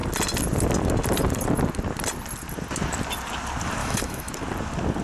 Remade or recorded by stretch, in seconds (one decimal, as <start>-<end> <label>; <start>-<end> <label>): 0.0-3.8 recorded; 3.8-4.3 remade; 4.3-5.0 recorded